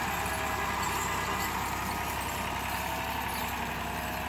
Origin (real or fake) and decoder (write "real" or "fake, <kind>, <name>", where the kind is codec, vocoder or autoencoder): real